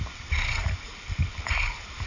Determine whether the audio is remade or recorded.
recorded